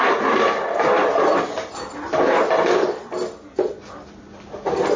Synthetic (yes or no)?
no